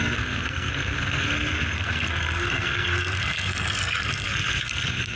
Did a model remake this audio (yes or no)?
yes